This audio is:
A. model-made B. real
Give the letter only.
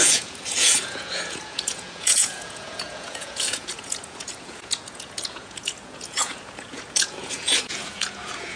A